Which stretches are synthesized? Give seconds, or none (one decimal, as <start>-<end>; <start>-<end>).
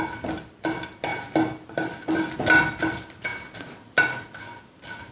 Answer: none